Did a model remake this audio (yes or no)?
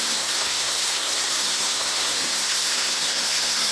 yes